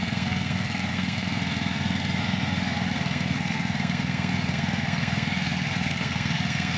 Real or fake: fake